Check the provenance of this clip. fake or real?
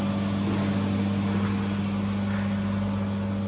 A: real